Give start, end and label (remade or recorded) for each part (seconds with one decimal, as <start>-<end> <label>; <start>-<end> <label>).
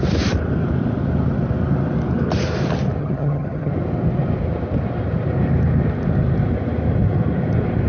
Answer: 0.0-3.0 recorded; 3.0-3.7 remade; 3.7-7.9 recorded